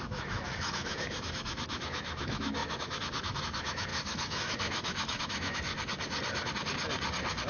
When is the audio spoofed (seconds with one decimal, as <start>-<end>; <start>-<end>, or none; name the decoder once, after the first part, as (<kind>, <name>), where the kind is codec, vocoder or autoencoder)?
0.0-5.7 (autoencoder, DAC-VAE)